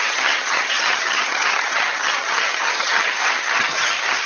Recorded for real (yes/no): no